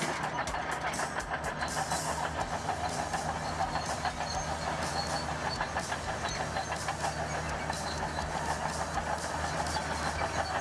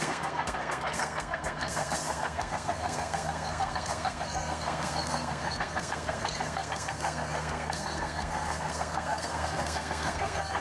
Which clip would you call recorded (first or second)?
first